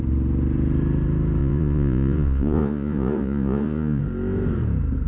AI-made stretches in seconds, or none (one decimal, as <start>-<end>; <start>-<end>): 1.4-4.0